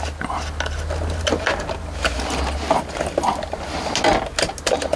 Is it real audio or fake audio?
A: real